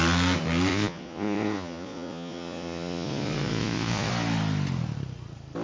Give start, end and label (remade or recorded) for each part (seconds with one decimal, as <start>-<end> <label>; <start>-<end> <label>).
0.0-0.7 recorded; 0.7-4.1 remade; 4.1-5.6 recorded